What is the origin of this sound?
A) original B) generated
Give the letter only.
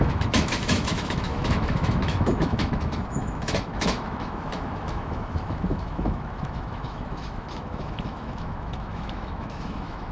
B